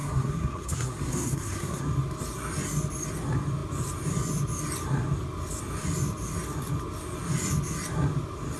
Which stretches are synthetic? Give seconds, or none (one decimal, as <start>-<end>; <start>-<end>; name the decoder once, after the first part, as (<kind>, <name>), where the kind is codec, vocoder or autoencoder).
0.0-1.8 (codec, SNAC)